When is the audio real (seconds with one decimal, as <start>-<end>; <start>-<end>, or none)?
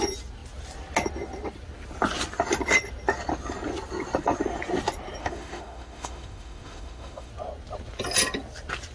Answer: 0.0-5.2; 7.3-8.9